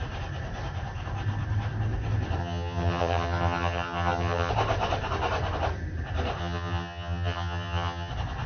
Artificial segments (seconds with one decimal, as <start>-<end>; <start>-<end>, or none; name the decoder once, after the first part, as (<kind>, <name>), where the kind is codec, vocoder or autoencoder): 2.4-4.5 (vocoder, HiFi-GAN); 6.4-8.1